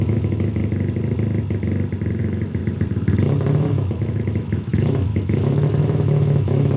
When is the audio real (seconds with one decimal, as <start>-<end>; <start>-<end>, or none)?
0.6-2.2; 2.6-3.7